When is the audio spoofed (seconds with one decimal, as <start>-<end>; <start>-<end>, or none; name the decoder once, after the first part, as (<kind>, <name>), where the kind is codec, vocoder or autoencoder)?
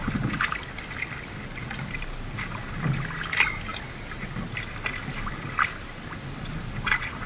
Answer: none